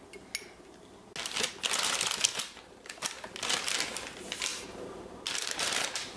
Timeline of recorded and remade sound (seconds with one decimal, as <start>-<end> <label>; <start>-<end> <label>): 0.0-4.5 recorded; 4.5-6.2 remade